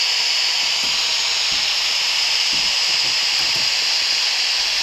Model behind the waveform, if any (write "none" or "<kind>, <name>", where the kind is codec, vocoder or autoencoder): none